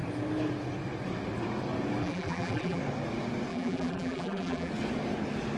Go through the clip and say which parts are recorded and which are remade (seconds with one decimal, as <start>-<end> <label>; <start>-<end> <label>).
0.0-2.0 recorded; 2.0-2.8 remade; 2.8-3.5 recorded; 3.5-4.7 remade; 4.7-5.6 recorded

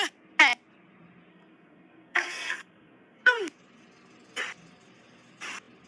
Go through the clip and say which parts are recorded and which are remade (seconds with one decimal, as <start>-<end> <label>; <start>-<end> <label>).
0.0-1.3 recorded; 1.3-3.4 remade; 3.4-5.9 recorded

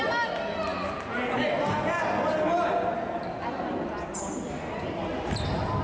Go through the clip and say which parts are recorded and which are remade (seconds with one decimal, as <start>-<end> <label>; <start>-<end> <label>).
0.0-5.8 recorded

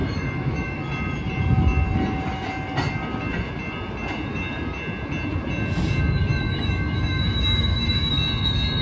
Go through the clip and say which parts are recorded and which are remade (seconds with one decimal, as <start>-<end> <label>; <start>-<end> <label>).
0.0-0.8 remade; 0.8-6.2 recorded; 6.2-8.1 remade; 8.1-8.8 recorded

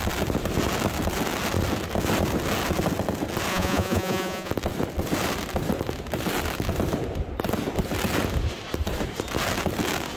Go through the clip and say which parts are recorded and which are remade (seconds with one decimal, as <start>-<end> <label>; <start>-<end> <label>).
0.0-3.5 recorded; 3.5-4.5 remade; 4.5-10.2 recorded

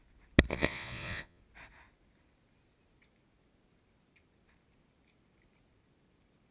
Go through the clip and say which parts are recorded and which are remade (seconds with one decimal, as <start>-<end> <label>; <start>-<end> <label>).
0.0-0.5 recorded; 0.5-1.4 remade; 1.4-6.5 recorded

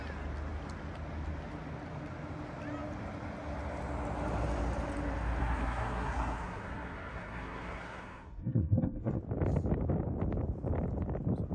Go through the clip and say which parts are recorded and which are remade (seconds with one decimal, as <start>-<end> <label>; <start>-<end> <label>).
0.0-5.4 recorded; 5.4-9.2 remade; 9.2-11.5 recorded

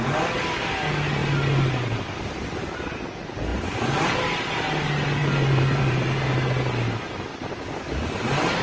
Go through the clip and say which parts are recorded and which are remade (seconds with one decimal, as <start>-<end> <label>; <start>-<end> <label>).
0.0-3.5 recorded; 3.5-4.2 remade; 4.2-5.2 recorded; 5.2-6.3 remade; 6.3-8.6 recorded